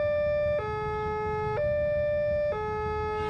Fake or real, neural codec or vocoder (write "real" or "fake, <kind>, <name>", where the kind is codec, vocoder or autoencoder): real